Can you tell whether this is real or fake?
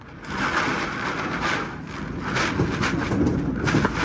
real